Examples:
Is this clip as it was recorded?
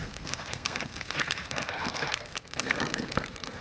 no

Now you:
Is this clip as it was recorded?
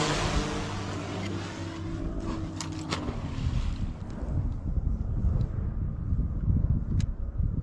yes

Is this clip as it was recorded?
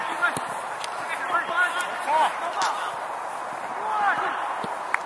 yes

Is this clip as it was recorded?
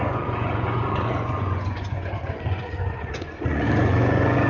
no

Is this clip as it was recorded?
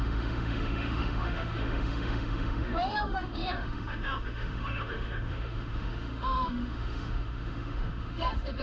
no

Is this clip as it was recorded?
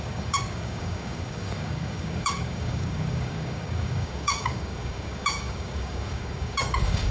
no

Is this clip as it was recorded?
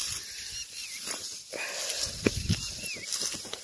yes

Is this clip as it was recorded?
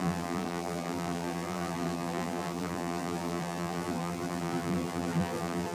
no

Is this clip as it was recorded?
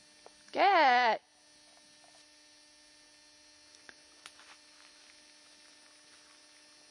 yes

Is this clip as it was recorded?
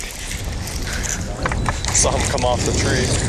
yes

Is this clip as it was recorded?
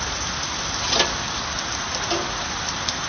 yes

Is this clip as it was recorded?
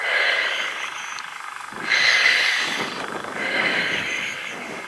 no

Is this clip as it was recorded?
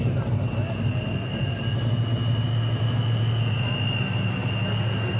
yes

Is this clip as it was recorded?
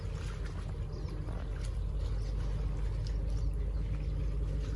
yes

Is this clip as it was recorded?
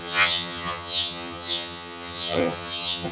no